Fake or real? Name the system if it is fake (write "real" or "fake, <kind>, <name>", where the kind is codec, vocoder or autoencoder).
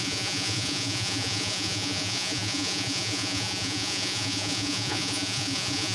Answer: fake, vocoder, Vocos